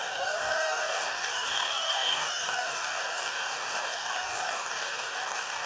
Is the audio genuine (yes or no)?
no